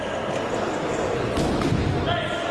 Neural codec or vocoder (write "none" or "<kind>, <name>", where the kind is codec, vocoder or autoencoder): none